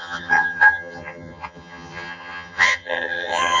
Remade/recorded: remade